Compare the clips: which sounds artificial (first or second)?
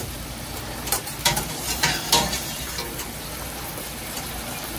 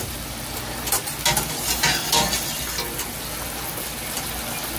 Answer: first